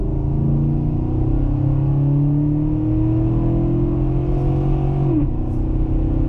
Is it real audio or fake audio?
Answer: real